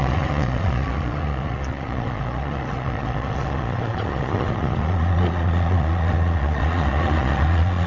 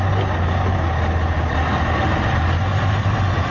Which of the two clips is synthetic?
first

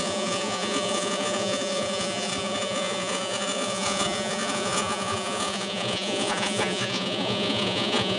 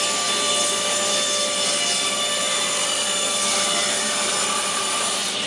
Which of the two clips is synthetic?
first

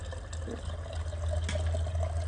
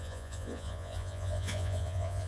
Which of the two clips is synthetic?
second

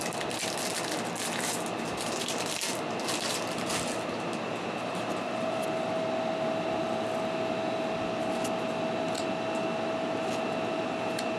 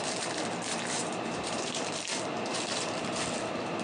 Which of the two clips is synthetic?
second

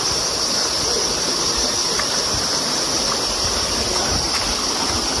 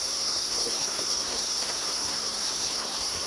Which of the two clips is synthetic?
second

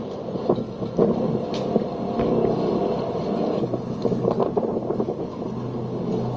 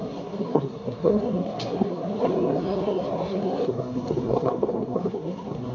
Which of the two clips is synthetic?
second